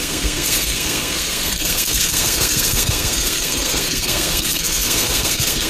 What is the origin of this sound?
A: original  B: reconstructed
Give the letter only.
B